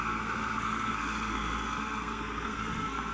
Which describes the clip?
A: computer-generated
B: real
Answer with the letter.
A